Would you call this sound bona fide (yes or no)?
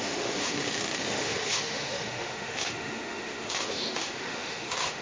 no